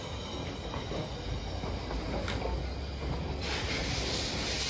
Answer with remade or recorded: recorded